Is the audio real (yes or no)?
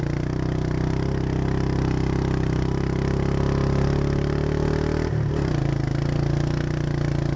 yes